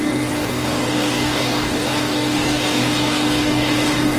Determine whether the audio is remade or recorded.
remade